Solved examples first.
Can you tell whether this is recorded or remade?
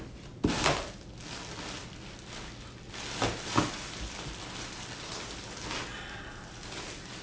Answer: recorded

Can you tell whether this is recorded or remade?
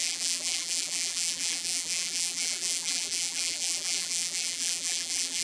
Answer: remade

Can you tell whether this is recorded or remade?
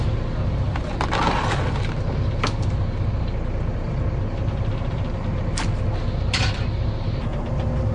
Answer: remade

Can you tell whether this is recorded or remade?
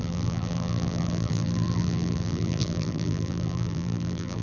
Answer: remade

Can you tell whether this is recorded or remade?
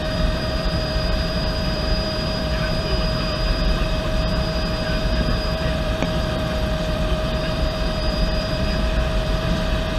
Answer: remade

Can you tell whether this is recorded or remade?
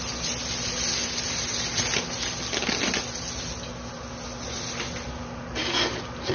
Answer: recorded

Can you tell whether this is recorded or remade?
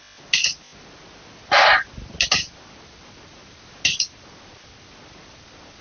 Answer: recorded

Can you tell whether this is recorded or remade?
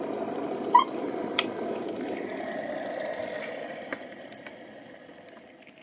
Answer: remade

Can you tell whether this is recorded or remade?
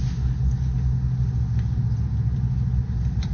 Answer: recorded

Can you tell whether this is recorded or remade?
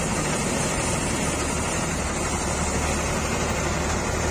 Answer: recorded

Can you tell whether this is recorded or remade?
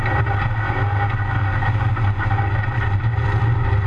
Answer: recorded